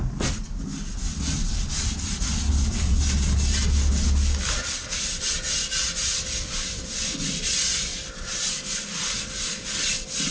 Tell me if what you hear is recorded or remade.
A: recorded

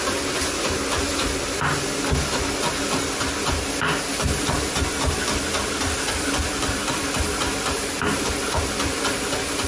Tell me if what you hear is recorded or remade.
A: recorded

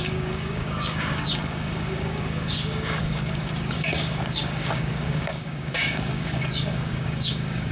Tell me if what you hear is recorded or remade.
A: remade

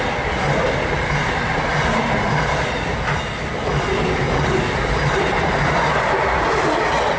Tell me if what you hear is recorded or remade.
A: recorded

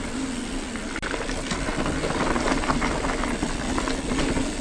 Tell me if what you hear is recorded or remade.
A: recorded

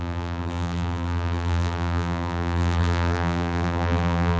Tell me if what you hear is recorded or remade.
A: remade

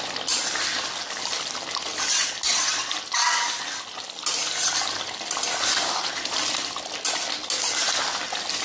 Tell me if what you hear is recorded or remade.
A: recorded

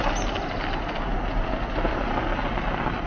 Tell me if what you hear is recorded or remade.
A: recorded